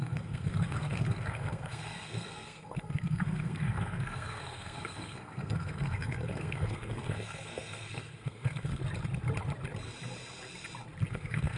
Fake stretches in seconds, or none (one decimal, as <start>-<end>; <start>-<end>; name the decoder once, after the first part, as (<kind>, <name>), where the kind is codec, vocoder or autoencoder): 0.0-8.8 (codec, SNAC); 11.1-11.6